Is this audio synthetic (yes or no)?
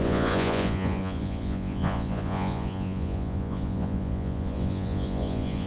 yes